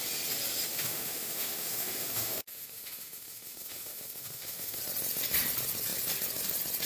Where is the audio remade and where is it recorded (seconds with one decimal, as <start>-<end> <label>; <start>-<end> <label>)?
0.0-0.7 recorded; 0.7-4.8 remade; 4.8-6.9 recorded